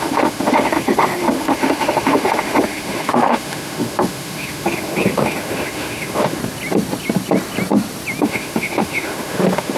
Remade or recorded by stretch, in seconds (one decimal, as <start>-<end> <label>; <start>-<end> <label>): 0.0-6.4 remade; 6.4-8.2 recorded; 8.2-9.8 remade